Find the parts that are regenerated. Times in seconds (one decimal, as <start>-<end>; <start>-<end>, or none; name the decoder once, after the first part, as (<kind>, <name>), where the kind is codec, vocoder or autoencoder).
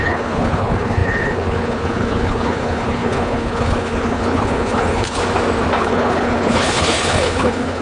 0.0-5.2 (codec, HILCodec); 5.8-7.8